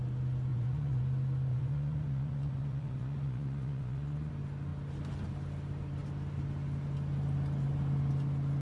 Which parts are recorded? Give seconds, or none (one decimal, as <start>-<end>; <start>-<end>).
0.0-0.5; 1.0-1.5; 4.3-8.6